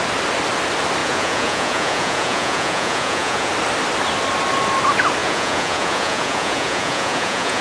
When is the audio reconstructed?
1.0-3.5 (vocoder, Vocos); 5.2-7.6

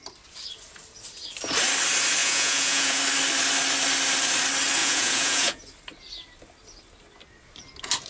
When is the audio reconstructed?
2.2-3.0 (vocoder, Vocos); 4.8-5.6

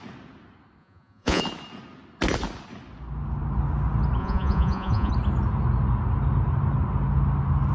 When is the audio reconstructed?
0.8-1.4 (vocoder, Vocos); 4.2-5.1